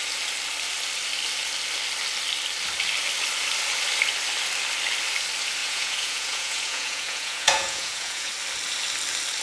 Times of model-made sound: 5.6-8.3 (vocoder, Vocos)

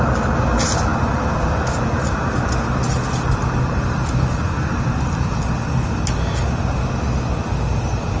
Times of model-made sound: none

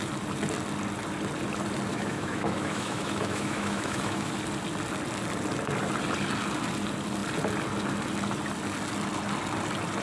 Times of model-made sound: 1.9-4.3 (autoencoder, DAC-VAE)

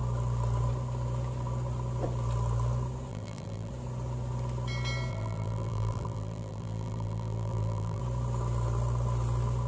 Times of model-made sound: 3.1-3.7 (vocoder, BigVGAN v2); 5.1-8.0

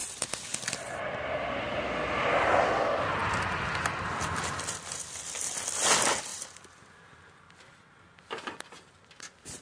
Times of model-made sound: none